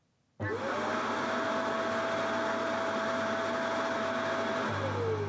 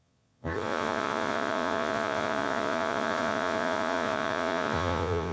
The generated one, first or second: second